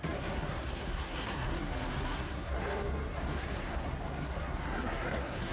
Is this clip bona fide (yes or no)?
no